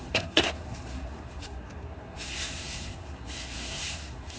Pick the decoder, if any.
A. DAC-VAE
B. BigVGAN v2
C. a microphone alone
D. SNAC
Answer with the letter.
D